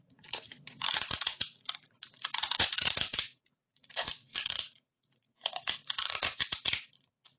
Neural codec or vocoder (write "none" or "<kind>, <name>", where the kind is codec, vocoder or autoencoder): vocoder, Vocos